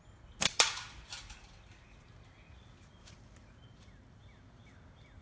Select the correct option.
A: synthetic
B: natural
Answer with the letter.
B